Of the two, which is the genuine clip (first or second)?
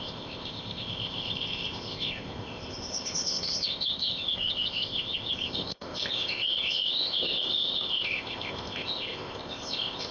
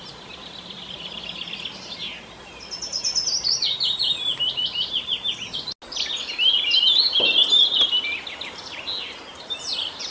second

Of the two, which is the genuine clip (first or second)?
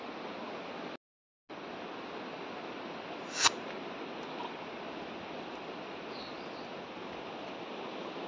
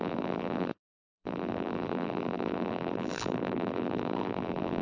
first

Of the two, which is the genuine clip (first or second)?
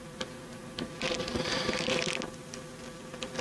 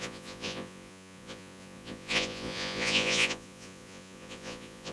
first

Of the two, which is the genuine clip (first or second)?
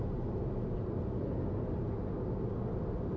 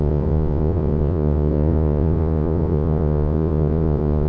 first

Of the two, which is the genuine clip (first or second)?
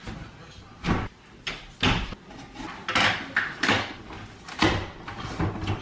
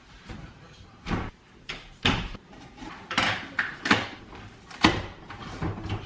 first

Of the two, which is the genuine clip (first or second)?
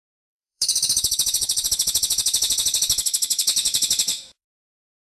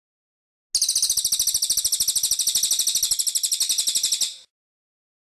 second